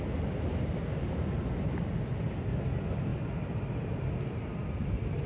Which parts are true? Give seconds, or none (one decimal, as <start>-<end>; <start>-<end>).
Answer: 0.0-5.3